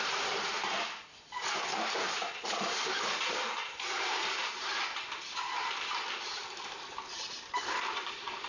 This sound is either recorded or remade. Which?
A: remade